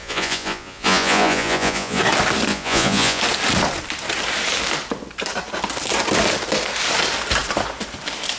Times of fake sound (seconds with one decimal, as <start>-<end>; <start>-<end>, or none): 0.0-2.0; 2.5-3.2